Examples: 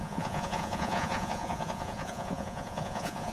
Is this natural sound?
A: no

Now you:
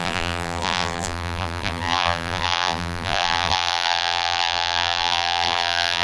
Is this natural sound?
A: no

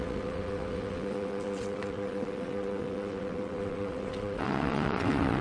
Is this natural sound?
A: no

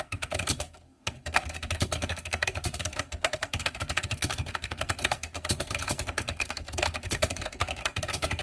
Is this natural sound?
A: no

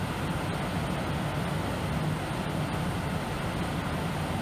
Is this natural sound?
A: yes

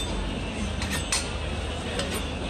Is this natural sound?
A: yes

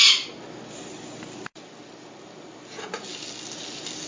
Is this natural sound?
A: yes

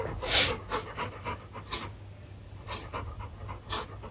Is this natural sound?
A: yes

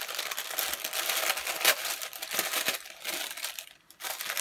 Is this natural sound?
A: yes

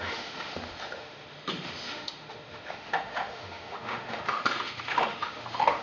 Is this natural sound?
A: no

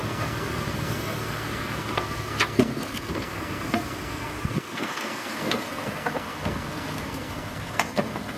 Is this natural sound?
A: no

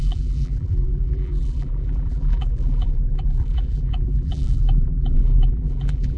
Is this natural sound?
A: no